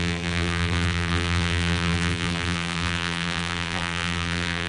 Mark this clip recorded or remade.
remade